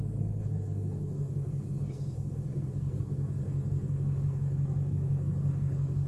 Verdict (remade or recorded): remade